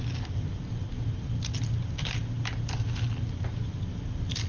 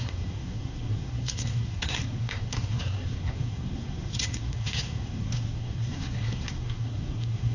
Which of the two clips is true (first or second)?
first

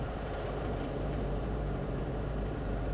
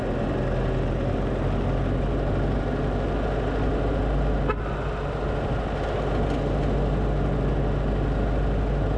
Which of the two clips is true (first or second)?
second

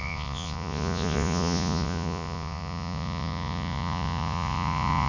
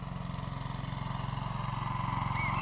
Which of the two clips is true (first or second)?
second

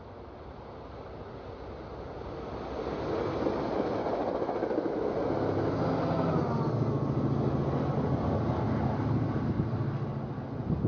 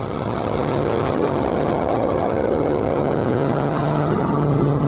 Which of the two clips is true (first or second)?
first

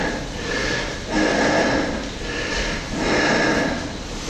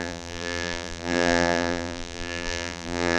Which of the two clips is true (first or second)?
first